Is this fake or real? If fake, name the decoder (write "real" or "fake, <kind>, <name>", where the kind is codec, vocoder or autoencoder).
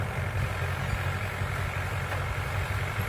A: real